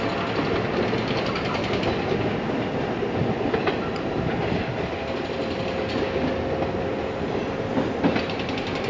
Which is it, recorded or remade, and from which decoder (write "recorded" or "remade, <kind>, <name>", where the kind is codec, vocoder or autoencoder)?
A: recorded